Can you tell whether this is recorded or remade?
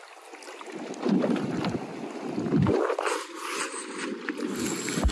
recorded